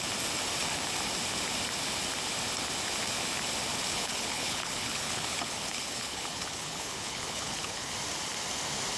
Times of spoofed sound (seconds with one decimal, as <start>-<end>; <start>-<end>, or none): 3.9-7.9